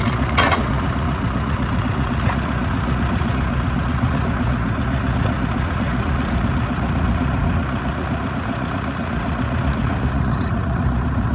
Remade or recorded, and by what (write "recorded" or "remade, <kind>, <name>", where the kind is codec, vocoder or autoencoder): remade, vocoder, Vocos